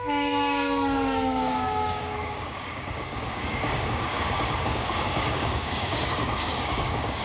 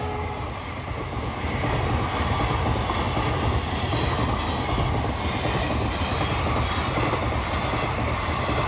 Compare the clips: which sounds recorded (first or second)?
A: second